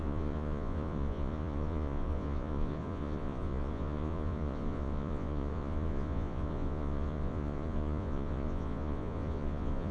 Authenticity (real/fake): fake